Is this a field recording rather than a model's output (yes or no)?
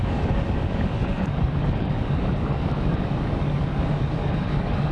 no